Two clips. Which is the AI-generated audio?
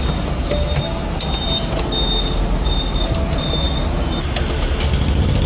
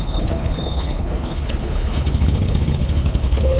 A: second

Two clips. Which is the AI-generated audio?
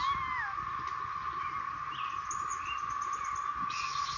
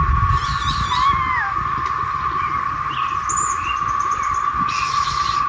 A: second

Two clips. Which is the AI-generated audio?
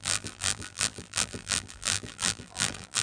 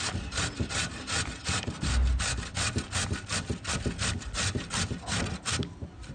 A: first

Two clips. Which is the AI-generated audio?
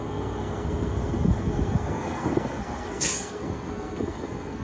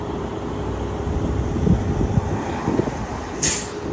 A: first